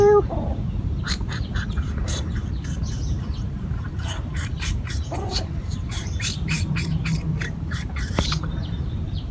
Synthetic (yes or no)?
yes